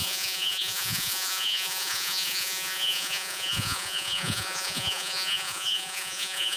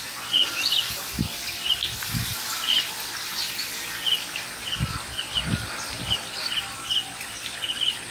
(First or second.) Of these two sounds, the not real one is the first